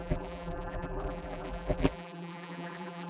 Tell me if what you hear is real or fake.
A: fake